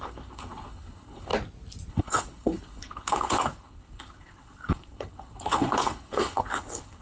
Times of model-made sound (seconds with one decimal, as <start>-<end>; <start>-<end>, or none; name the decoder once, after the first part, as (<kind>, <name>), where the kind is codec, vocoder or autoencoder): 0.0-1.3 (codec, HILCodec); 1.9-7.0